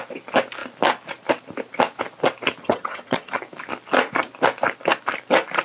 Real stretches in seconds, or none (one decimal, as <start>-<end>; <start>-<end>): 0.0-2.6; 3.4-5.6